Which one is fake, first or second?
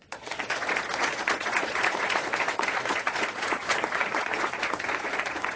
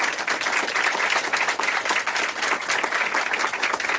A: first